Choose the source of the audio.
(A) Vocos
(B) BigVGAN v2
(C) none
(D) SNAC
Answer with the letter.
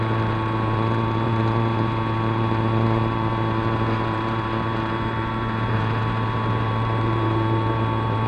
B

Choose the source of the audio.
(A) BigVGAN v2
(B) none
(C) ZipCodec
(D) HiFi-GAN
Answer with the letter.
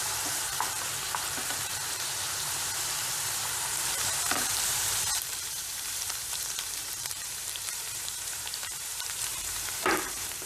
A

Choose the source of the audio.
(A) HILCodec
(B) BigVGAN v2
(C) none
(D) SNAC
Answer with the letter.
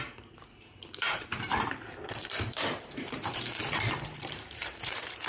B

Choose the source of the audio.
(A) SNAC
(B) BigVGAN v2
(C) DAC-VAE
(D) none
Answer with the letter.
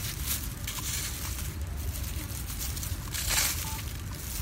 D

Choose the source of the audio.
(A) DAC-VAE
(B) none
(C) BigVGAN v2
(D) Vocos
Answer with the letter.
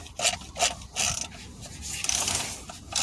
B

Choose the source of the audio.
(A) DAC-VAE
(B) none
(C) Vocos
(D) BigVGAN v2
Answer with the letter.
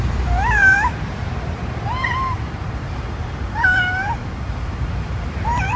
D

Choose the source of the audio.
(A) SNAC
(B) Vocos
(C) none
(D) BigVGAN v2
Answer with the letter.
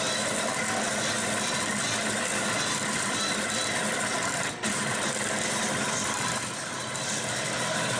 C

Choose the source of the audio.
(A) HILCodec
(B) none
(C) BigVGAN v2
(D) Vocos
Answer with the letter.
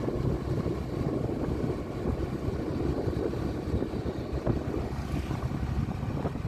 B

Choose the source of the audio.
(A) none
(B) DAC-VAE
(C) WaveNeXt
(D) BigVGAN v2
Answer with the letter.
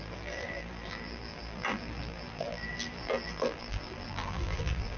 D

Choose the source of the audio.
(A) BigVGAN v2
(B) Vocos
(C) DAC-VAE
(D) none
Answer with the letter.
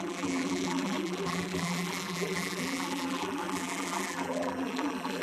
A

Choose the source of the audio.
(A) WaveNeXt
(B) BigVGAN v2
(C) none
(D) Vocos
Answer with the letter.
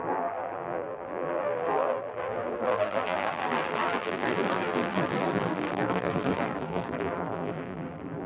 B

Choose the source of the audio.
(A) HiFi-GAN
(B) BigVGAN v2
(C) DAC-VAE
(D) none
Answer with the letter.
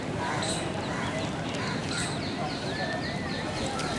B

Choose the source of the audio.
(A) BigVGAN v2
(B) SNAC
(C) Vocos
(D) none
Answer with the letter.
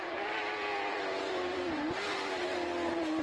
A